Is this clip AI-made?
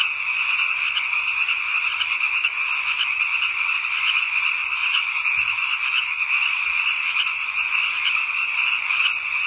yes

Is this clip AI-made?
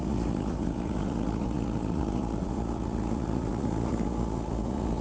yes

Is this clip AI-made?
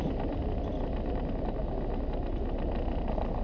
no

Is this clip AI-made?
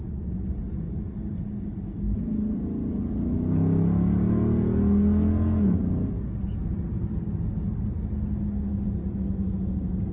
no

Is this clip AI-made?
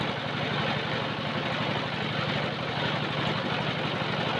no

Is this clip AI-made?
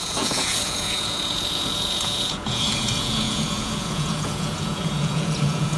yes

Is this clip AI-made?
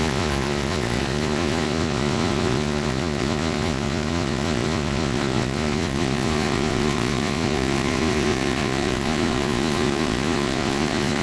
yes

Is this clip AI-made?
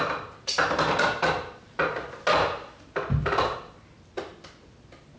no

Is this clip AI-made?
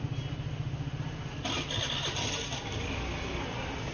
no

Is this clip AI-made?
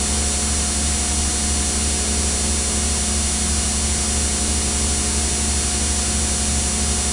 no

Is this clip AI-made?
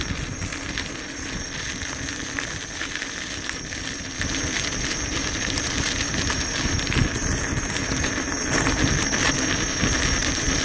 no